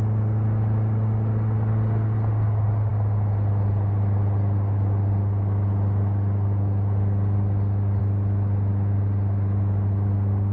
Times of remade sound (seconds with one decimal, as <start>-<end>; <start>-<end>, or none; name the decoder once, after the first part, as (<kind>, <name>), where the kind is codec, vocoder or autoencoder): none